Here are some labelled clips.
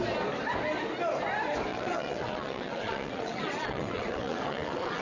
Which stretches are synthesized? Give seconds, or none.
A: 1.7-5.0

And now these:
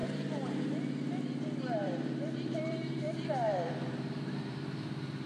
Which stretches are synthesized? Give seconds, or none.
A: 0.0-0.6; 1.8-5.3

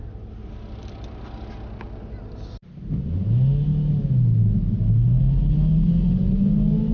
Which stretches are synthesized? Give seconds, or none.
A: none

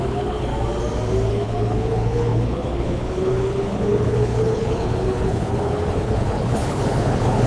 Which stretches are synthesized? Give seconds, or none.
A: 0.0-0.5; 1.3-7.5